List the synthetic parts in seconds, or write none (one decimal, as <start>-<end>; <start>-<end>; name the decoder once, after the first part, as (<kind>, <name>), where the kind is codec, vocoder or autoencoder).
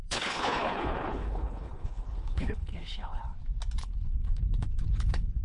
0.0-3.2 (codec, HILCodec); 3.8-5.4